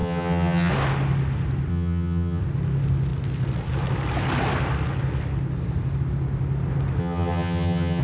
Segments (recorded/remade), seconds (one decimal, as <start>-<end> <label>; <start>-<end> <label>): 0.0-0.7 remade; 0.7-1.7 recorded; 1.7-2.4 remade; 2.4-7.0 recorded; 7.0-8.0 remade